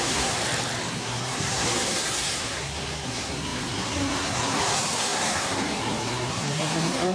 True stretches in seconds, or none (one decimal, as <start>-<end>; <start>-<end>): 0.4-0.9